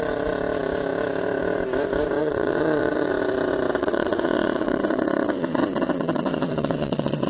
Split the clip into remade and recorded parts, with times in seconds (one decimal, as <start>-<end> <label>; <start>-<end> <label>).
0.0-2.2 recorded; 2.2-3.1 remade; 3.1-3.8 recorded; 3.8-7.3 remade